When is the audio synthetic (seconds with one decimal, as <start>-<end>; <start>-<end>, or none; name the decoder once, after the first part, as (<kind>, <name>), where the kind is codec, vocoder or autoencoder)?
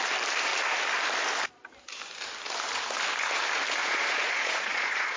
3.8-5.2 (vocoder, Vocos)